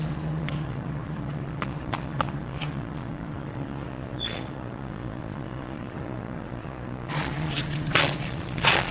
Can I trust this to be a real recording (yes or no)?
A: no